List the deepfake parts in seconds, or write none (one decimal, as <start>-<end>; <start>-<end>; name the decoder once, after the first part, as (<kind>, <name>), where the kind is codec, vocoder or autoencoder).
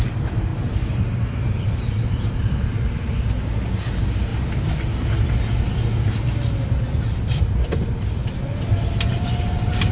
0.0-4.3 (vocoder, BigVGAN v2); 7.1-8.2; 9.1-9.9